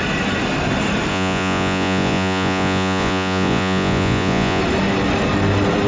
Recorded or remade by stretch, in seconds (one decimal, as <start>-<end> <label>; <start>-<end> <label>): 0.0-1.1 recorded; 1.1-4.6 remade; 4.6-5.9 recorded